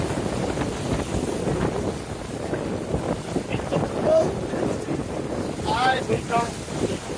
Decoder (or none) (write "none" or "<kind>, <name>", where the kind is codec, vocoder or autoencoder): none